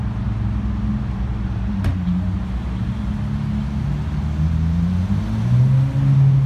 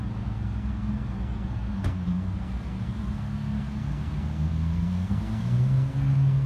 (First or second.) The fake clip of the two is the second